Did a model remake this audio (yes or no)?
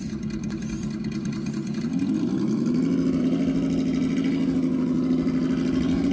no